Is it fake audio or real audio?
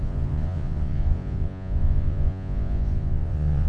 fake